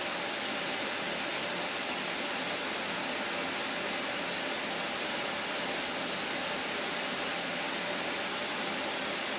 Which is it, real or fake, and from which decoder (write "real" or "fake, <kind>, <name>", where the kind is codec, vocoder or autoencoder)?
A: real